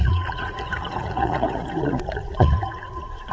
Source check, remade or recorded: remade